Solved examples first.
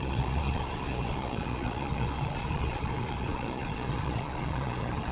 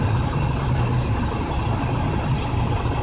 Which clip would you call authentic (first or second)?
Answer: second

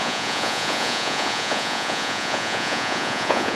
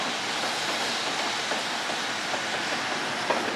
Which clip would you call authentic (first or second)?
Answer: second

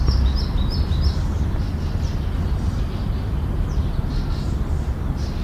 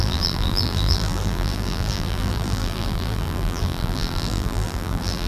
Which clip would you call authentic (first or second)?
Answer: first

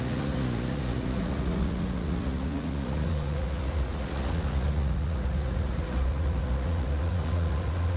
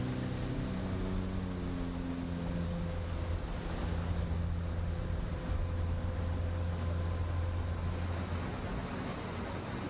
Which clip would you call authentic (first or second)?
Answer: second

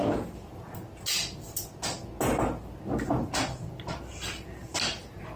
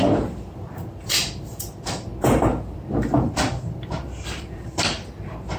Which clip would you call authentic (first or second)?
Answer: first